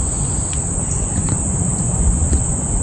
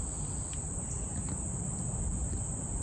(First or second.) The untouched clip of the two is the second